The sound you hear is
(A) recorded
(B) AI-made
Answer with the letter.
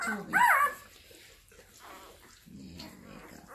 A